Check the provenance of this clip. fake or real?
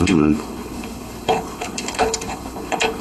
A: fake